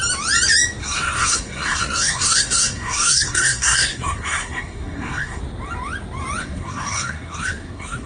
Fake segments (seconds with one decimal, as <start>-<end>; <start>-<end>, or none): 0.8-5.4; 6.4-8.1

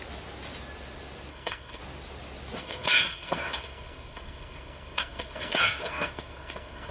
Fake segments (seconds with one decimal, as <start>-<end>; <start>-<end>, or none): 1.3-1.8; 2.6-6.9

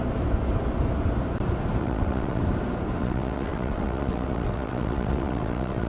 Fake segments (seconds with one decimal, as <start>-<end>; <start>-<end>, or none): 1.8-2.4; 3.0-5.9

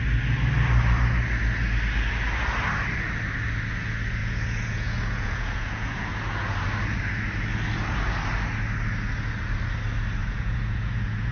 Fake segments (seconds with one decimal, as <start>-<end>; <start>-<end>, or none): 4.2-6.6; 10.2-11.3

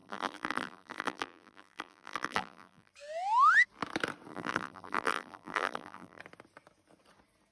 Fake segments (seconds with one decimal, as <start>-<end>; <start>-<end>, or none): 0.0-2.9; 4.3-6.2

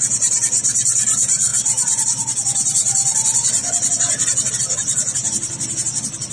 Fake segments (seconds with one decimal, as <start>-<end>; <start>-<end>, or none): none

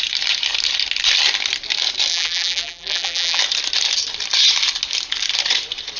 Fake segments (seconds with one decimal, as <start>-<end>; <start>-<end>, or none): 2.1-3.4

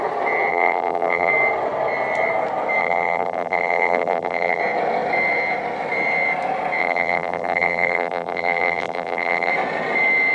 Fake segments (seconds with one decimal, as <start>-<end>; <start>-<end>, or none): 0.5-1.3; 2.8-4.6; 6.8-9.5